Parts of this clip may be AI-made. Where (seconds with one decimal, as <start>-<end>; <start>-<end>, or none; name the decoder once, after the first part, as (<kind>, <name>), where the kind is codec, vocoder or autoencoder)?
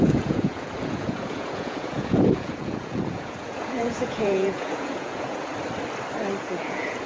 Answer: 0.0-5.5 (vocoder, Vocos); 6.4-7.1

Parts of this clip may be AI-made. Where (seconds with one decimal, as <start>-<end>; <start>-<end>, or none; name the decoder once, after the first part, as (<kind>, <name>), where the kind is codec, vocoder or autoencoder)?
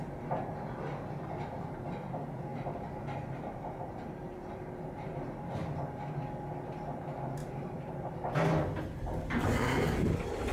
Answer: 2.5-5.7 (vocoder, BigVGAN v2); 7.4-7.9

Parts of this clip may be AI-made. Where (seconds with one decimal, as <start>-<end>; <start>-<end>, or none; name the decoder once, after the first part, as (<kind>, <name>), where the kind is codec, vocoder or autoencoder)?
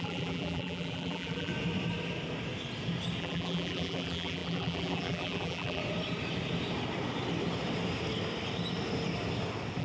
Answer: 0.0-1.5 (vocoder, BigVGAN v2); 3.2-5.8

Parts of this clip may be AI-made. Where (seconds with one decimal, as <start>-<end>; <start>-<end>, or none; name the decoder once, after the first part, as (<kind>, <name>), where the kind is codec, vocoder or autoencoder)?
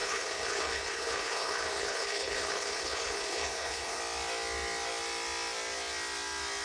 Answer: 0.0-4.0 (codec, HILCodec)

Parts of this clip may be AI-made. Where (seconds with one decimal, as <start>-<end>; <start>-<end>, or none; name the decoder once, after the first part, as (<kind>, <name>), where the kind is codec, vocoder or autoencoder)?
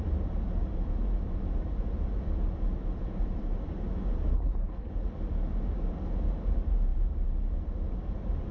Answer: 4.3-4.9 (codec, HILCodec)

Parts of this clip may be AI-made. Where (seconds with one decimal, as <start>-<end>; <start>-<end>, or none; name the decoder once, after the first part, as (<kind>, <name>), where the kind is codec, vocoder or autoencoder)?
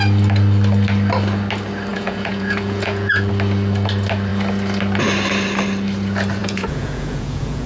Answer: 1.9-3.3 (vocoder, Vocos); 6.4-7.7